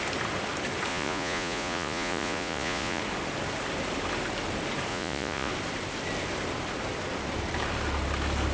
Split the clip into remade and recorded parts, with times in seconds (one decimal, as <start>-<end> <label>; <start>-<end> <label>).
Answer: 0.0-0.9 recorded; 0.9-3.0 remade; 3.0-4.9 recorded; 4.9-5.5 remade; 5.5-8.5 recorded